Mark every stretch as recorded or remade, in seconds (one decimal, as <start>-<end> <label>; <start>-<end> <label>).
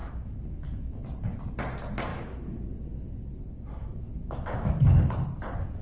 0.0-1.0 remade; 1.0-2.1 recorded; 2.1-2.6 remade; 2.6-3.8 recorded; 3.8-4.8 remade; 4.8-5.8 recorded